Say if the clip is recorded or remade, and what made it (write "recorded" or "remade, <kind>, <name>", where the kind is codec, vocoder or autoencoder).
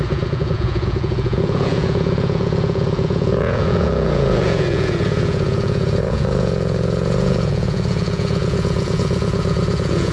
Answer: remade, vocoder, Vocos